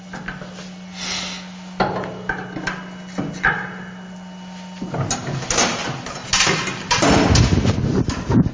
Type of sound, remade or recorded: recorded